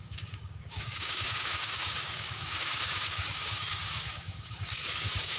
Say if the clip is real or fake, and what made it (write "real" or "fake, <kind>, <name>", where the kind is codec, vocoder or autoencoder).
fake, codec, DAC